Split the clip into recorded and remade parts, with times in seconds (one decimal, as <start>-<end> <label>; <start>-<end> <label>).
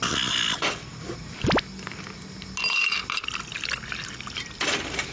0.0-5.1 recorded